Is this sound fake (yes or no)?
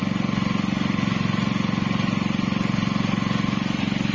no